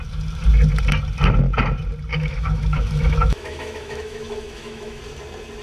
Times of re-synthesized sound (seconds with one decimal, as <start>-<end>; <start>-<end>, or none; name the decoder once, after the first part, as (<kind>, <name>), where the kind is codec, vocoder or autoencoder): 2.1-5.0 (autoencoder, DAC-VAE)